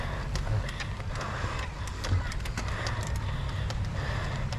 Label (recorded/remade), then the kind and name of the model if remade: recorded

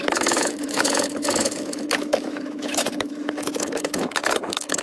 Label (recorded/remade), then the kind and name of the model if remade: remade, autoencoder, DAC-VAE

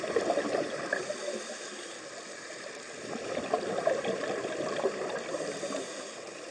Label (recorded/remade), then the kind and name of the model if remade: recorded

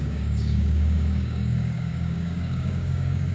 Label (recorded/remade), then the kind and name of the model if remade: remade, codec, DAC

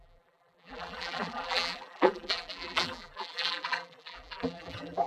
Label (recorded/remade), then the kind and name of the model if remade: remade, vocoder, BigVGAN v2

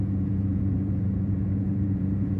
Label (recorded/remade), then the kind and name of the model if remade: remade, vocoder, Vocos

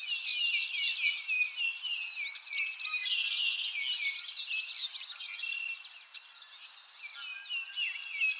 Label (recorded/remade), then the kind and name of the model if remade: recorded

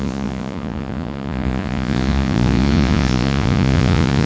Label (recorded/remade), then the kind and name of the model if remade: remade, vocoder, Vocos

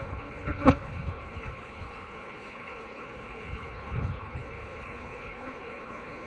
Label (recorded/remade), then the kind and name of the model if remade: remade, codec, HILCodec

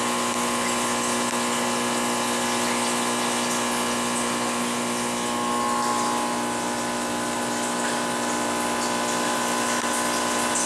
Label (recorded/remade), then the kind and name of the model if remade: recorded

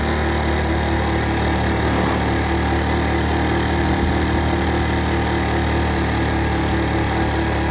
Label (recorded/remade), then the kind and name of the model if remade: recorded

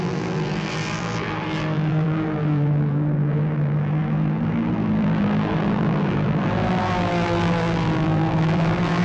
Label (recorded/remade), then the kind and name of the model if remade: remade, vocoder, BigVGAN v2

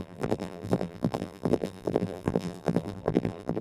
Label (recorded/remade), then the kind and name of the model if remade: remade, vocoder, BigVGAN v2